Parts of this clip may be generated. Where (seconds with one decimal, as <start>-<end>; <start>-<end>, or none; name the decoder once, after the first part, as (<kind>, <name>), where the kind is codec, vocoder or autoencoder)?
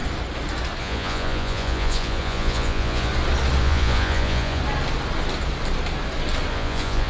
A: 0.8-3.1 (vocoder, Vocos); 3.6-4.6; 6.5-7.1